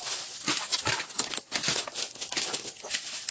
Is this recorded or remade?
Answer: recorded